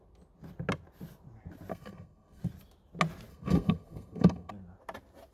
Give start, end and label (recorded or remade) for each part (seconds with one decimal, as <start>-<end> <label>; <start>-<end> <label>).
0.0-1.7 recorded; 1.7-2.4 remade; 2.4-3.3 recorded; 3.3-4.5 remade; 4.5-5.3 recorded